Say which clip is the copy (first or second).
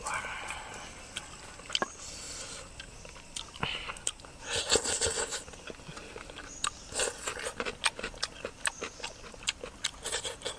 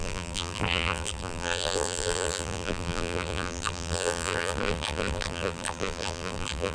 second